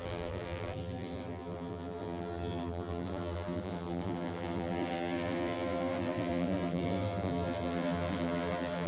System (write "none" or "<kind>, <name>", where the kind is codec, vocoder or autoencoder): vocoder, BigVGAN v2